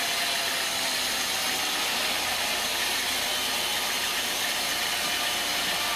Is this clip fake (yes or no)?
no